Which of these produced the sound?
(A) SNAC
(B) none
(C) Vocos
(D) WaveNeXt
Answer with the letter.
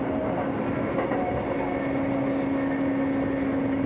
B